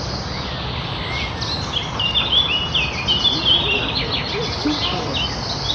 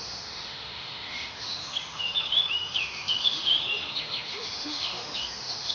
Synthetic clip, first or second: second